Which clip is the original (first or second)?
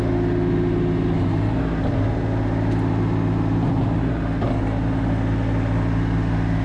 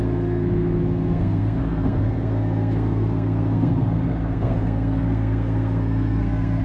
first